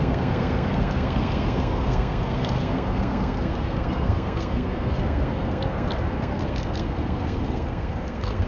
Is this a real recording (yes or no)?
no